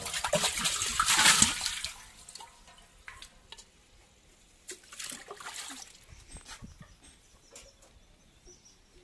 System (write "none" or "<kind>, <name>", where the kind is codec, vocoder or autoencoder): none